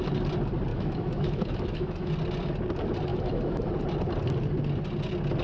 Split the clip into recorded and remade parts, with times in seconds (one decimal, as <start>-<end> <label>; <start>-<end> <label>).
0.0-0.7 recorded; 0.7-2.1 remade; 2.1-3.1 recorded; 3.1-3.7 remade; 3.7-5.4 recorded